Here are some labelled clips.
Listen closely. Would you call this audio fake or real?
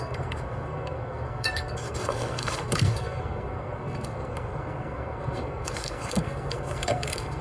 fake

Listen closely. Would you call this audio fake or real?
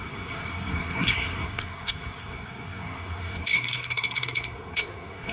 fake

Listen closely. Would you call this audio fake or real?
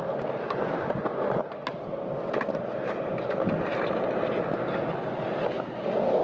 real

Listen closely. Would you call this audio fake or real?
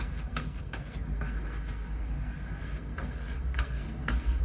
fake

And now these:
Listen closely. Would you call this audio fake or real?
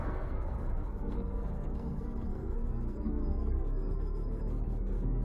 fake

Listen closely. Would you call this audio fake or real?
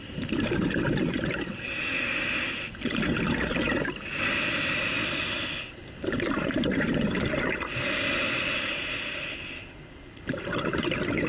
real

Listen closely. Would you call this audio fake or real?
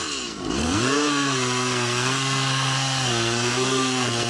fake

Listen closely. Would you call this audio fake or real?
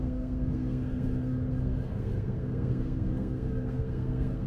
fake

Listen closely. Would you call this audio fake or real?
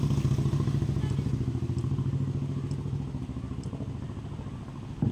real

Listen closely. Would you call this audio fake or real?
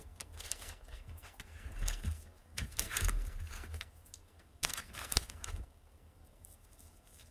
fake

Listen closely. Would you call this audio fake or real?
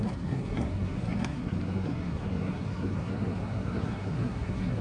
fake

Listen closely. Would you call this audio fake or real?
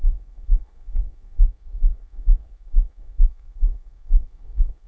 fake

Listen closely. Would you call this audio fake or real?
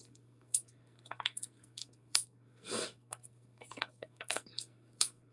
fake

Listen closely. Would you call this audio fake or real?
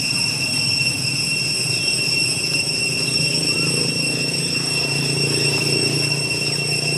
real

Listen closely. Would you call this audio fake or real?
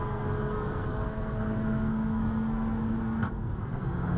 fake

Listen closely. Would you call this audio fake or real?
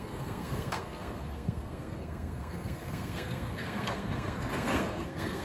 fake